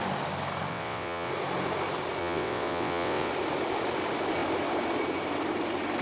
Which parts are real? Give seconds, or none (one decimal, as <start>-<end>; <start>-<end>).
0.0-0.7; 1.3-2.2; 3.3-6.0